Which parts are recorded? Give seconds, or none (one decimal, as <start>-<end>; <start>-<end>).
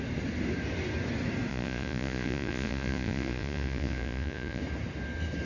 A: 0.0-1.5; 4.6-5.5